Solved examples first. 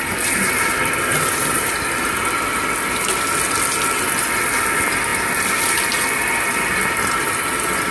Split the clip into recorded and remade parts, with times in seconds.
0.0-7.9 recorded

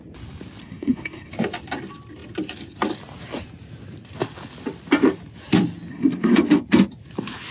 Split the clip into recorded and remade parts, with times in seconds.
0.0-0.6 recorded; 0.6-1.3 remade; 1.3-5.9 recorded; 5.9-6.4 remade; 6.4-7.5 recorded

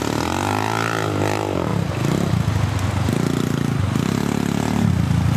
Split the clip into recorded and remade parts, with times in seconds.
0.0-5.4 recorded

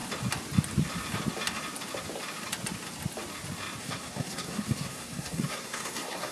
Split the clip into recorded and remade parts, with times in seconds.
0.0-3.8 recorded; 3.8-6.3 remade

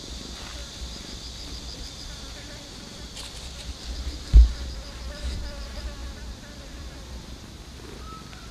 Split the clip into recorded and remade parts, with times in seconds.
0.0-8.5 recorded

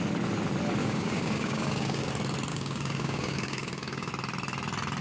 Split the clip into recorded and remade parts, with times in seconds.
0.0-0.8 recorded; 0.8-2.1 remade; 2.1-2.5 recorded; 2.5-4.1 remade; 4.1-5.0 recorded